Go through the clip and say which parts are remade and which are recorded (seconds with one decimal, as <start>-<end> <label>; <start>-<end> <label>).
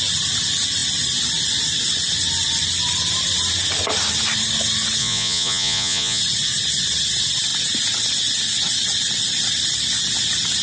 0.0-5.0 recorded; 5.0-6.2 remade; 6.2-10.6 recorded